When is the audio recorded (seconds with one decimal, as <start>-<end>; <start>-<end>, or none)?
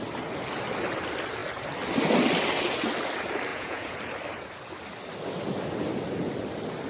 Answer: 0.0-3.5; 4.0-6.9